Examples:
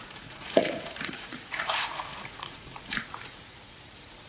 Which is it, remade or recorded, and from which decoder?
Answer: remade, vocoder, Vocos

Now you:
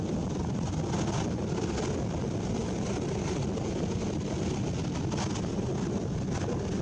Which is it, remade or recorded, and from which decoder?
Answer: recorded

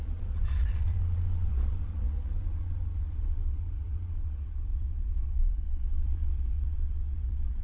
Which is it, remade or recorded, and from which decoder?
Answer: remade, vocoder, Vocos